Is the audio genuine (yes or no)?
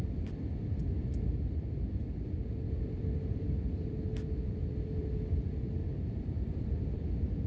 no